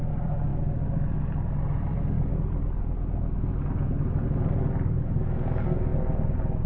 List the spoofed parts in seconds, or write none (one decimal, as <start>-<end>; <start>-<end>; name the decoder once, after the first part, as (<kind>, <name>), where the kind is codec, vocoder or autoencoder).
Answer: none